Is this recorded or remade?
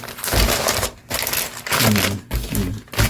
recorded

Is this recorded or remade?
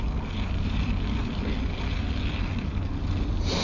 recorded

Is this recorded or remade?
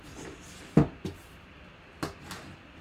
recorded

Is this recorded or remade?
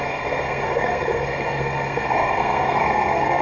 remade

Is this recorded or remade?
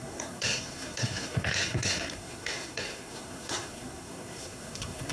remade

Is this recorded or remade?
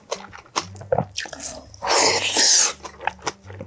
recorded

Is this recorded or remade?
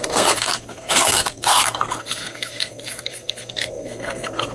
remade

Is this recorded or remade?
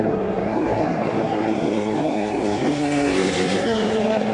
remade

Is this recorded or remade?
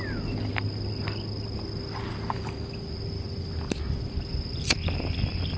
recorded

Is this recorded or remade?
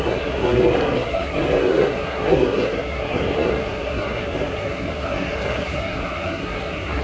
remade